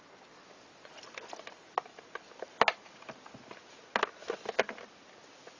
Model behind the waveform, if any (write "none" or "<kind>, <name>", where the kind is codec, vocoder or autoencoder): none